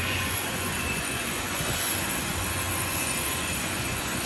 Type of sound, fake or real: fake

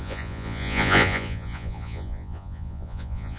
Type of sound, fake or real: fake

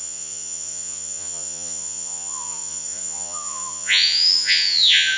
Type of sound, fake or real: fake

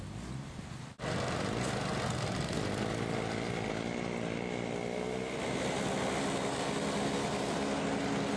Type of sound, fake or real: real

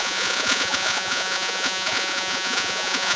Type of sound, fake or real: fake